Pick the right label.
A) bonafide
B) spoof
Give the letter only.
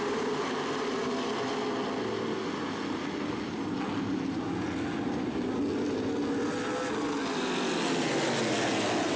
A